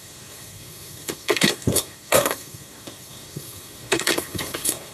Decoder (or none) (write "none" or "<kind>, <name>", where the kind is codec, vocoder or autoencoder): codec, SNAC